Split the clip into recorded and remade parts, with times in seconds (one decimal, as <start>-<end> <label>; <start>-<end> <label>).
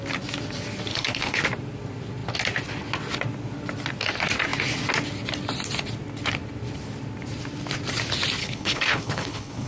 0.0-0.9 recorded; 0.9-1.4 remade; 1.4-8.4 recorded; 8.4-9.7 remade